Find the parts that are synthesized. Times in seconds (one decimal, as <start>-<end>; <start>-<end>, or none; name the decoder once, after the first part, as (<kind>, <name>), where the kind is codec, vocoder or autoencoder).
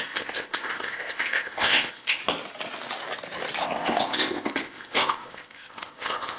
0.0-2.2 (codec, ZipCodec); 3.6-6.4